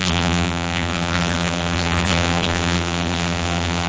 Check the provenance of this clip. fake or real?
fake